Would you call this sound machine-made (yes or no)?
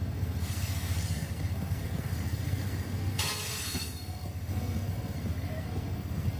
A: yes